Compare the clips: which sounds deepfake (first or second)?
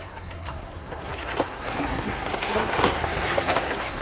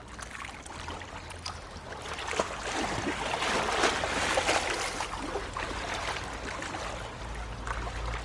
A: first